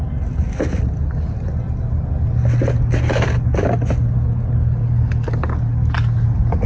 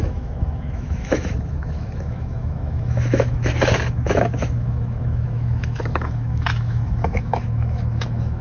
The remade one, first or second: second